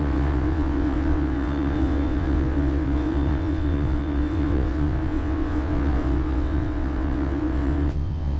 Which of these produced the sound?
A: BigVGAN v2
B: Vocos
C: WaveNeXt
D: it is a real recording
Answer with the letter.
C